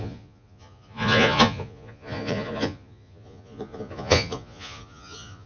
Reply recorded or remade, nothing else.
remade